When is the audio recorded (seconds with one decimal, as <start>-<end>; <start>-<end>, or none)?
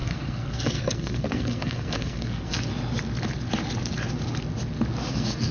2.7-5.1